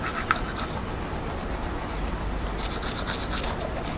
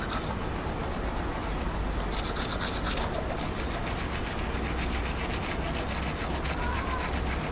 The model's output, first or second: second